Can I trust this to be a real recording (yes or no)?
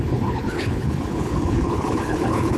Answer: no